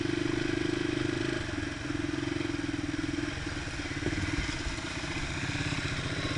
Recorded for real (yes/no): yes